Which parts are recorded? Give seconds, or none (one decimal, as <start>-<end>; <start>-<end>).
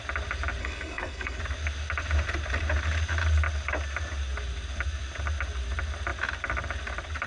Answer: 0.0-0.6; 1.4-7.3